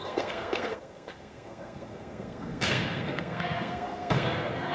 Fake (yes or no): yes